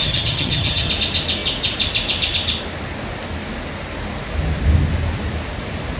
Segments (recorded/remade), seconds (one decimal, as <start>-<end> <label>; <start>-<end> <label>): 0.0-0.9 remade; 0.9-6.0 recorded